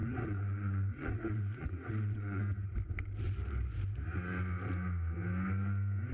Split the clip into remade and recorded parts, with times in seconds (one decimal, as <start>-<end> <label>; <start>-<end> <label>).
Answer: 0.0-2.4 remade; 2.4-6.1 recorded